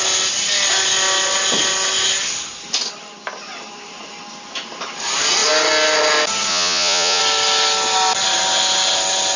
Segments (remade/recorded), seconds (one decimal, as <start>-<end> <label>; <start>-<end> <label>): 0.0-6.5 recorded; 6.5-7.2 remade; 7.2-9.4 recorded